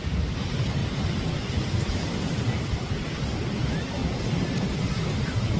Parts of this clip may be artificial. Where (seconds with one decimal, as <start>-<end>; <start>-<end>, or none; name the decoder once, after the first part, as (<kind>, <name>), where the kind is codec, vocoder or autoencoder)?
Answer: none